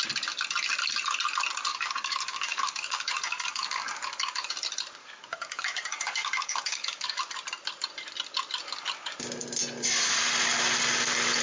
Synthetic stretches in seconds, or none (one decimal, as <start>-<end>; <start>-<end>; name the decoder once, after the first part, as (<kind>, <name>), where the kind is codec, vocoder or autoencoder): 1.7-4.5 (codec, DAC); 5.0-7.2